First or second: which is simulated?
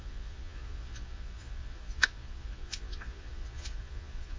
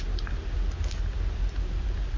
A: first